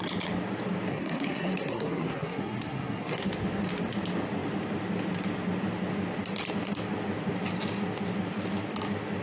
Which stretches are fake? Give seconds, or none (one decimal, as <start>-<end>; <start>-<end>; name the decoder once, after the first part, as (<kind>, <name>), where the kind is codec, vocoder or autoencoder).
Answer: 0.9-3.3 (codec, SNAC)